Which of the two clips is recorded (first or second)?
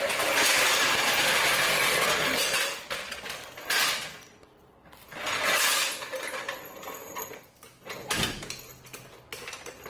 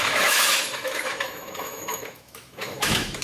first